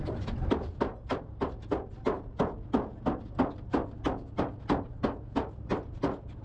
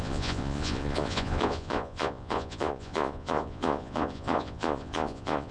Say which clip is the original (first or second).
first